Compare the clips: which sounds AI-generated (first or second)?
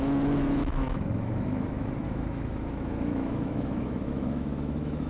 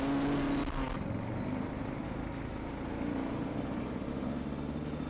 first